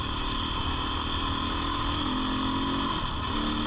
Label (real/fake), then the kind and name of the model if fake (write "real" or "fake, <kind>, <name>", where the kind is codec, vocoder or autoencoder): real